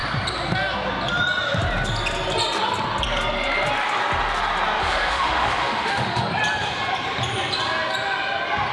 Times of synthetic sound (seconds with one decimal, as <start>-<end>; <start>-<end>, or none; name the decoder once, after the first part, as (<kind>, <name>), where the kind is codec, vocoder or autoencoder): 4.8-6.2 (autoencoder, DAC-VAE)